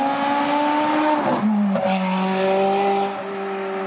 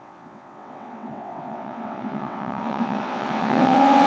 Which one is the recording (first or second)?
first